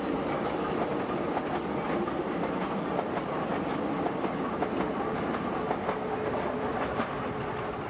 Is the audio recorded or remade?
recorded